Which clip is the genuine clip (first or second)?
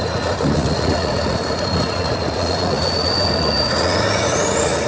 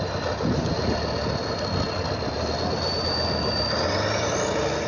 second